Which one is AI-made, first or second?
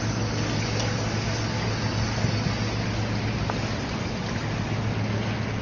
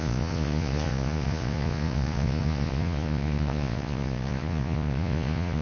second